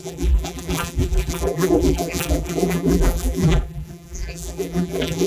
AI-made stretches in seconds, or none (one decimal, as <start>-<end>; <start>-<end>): 0.0-5.3